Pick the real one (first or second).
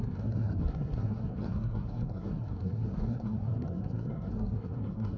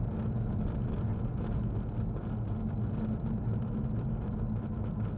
second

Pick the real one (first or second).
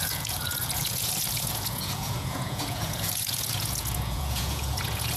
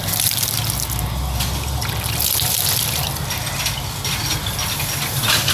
second